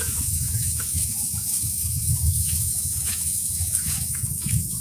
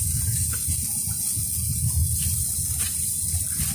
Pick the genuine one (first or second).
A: second